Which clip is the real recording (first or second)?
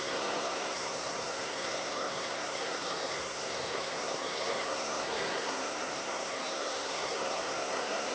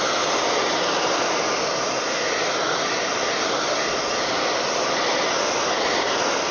second